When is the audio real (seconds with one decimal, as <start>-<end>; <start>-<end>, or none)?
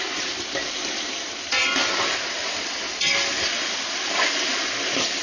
0.0-5.2